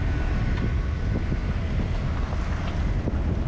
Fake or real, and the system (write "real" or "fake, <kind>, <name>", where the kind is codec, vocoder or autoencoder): real